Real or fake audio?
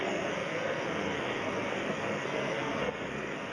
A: fake